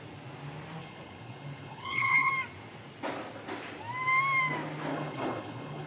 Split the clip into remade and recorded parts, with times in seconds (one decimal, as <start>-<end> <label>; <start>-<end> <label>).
0.0-0.8 recorded; 0.8-2.3 remade; 2.3-4.9 recorded; 4.9-5.9 remade